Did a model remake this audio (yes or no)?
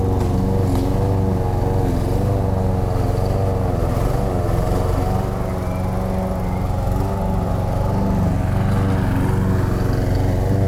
no